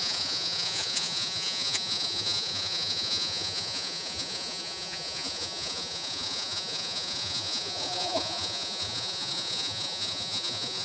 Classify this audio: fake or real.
fake